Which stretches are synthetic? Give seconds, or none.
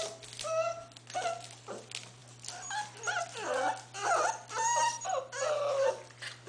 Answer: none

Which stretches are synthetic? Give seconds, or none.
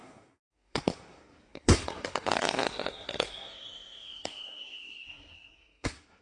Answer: 0.0-6.2 (codec, SNAC)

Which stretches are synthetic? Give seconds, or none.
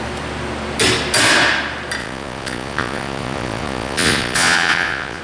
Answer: 2.0-5.2 (vocoder, Vocos)